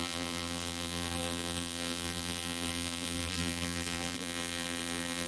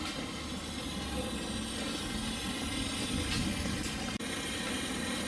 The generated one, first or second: first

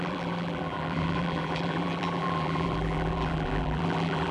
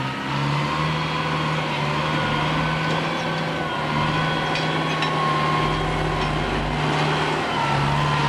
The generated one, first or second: first